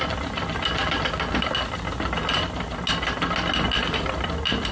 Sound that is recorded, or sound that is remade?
recorded